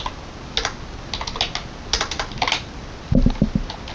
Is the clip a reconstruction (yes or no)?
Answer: no